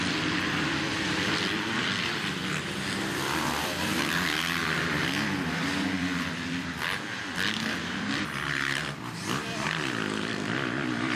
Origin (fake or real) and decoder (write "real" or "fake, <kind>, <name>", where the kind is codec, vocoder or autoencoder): fake, vocoder, BigVGAN v2